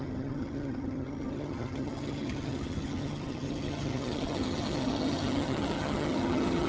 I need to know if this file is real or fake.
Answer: fake